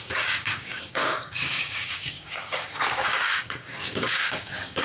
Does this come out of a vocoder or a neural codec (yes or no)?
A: yes